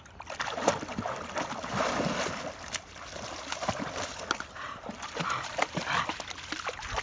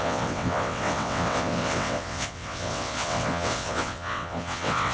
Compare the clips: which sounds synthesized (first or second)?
second